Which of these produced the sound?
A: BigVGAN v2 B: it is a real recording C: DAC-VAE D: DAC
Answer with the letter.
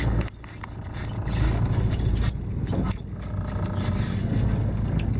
B